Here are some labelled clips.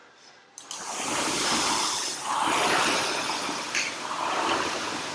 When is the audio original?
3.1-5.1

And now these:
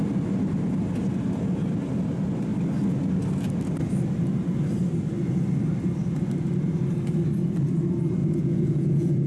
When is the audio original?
0.0-8.2

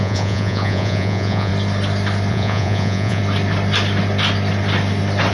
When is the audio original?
1.5-2.3; 3.2-5.3

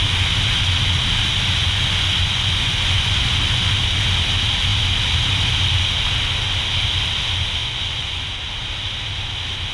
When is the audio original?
0.0-1.6; 3.2-7.6; 8.2-9.7

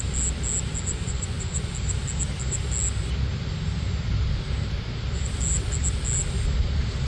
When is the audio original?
0.0-0.9; 1.7-7.1